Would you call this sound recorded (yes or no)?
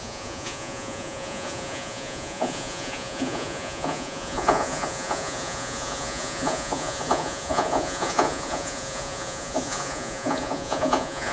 no